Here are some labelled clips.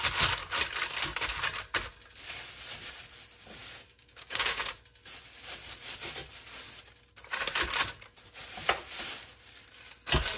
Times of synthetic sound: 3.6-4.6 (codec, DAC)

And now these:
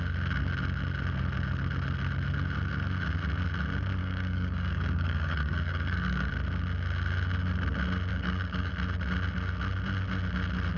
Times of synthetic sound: 4.0-6.3 (codec, DAC); 8.1-8.7